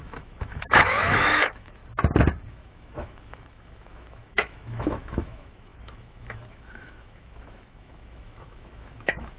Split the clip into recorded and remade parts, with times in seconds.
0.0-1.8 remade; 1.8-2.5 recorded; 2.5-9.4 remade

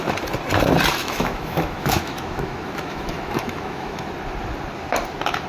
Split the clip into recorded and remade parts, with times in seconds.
0.0-1.0 recorded; 1.0-4.1 remade; 4.1-5.5 recorded

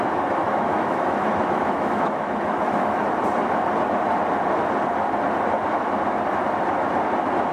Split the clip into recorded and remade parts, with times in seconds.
0.0-0.4 recorded; 0.4-3.0 remade; 3.0-7.5 recorded

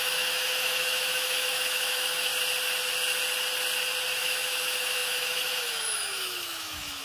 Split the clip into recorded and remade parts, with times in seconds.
0.0-2.3 remade; 2.3-4.2 recorded; 4.2-7.0 remade

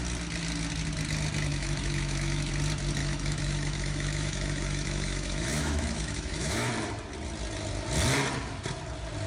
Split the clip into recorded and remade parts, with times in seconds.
0.0-1.5 recorded; 1.5-2.5 remade; 2.5-3.0 recorded; 3.0-6.7 remade; 6.7-9.3 recorded